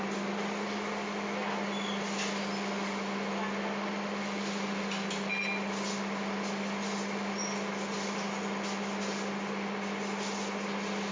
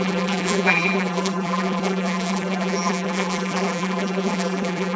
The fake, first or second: second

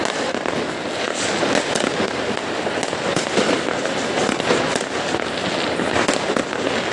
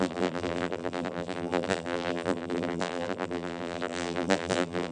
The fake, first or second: second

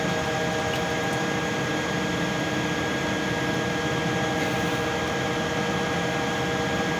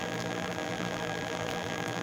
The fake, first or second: second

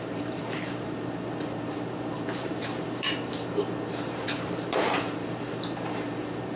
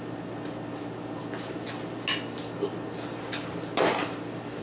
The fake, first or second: first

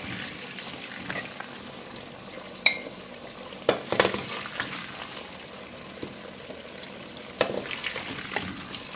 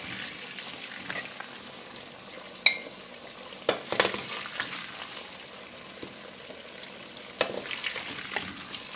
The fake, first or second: first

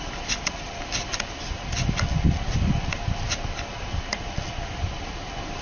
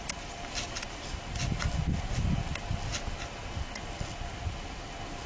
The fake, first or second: first